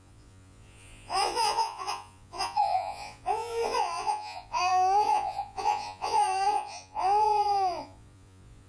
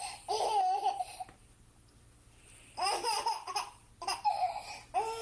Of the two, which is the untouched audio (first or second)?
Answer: second